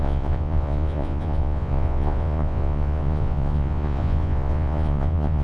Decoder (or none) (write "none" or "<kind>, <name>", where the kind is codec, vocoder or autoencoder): vocoder, Vocos